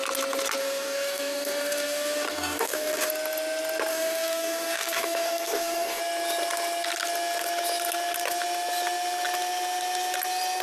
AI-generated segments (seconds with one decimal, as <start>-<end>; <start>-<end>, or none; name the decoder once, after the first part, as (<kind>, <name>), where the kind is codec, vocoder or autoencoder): 0.6-3.1 (codec, DAC); 3.9-6.0